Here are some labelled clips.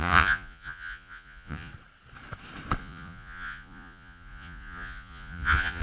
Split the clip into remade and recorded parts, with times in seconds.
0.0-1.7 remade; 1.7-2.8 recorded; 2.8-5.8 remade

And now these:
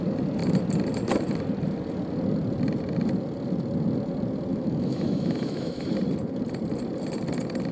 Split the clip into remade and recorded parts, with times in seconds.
0.0-4.5 recorded; 4.5-5.9 remade; 5.9-7.7 recorded

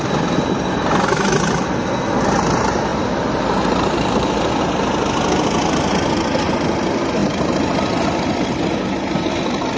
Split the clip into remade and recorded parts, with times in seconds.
0.0-2.9 recorded; 2.9-4.6 remade; 4.6-7.2 recorded; 7.2-9.3 remade; 9.3-9.8 recorded

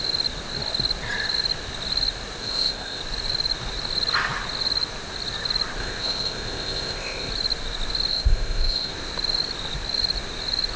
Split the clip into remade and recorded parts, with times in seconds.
0.0-2.4 recorded; 2.4-3.0 remade; 3.0-5.8 recorded; 5.8-7.3 remade; 7.3-8.1 recorded; 8.1-8.9 remade; 8.9-10.8 recorded

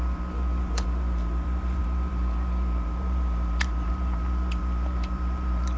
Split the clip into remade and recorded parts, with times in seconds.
0.0-5.8 remade

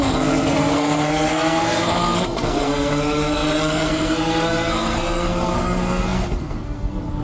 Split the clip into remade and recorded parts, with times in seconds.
0.0-7.2 remade

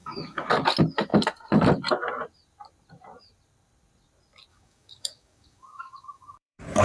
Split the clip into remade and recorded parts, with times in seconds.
0.0-0.5 remade; 0.5-4.5 recorded; 4.5-6.8 remade

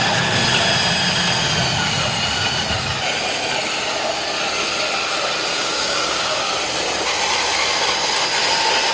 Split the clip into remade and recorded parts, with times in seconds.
0.0-5.5 recorded; 5.5-6.5 remade; 6.5-8.9 recorded